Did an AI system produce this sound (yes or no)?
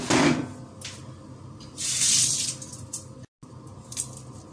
no